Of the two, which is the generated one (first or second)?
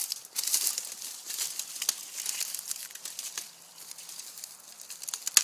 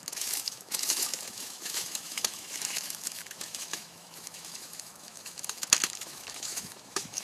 second